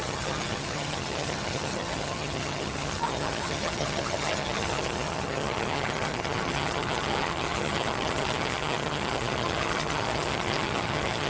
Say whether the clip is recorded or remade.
remade